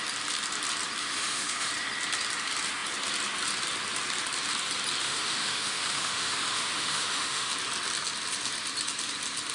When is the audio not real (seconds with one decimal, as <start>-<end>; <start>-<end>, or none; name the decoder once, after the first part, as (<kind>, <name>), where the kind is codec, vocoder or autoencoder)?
1.0-1.7 (autoencoder, DAC-VAE); 5.0-7.5